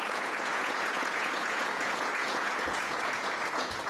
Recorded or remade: remade